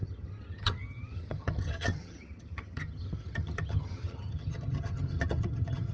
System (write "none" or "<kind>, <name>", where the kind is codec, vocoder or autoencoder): vocoder, HiFi-GAN